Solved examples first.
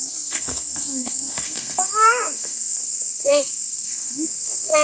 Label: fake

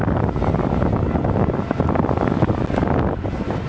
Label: real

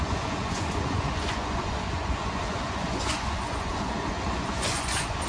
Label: fake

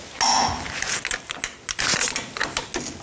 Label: real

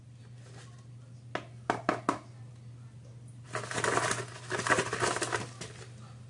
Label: real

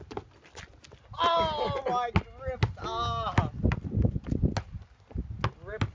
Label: real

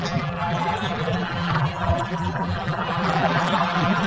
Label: fake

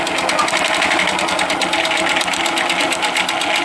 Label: real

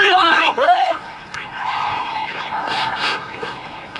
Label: fake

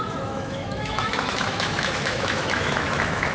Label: fake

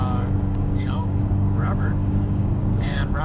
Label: fake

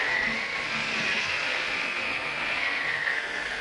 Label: fake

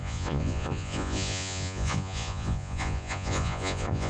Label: fake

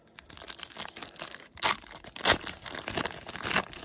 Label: real